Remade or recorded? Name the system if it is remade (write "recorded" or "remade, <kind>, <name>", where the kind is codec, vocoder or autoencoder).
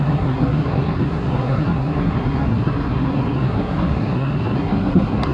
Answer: remade, codec, SNAC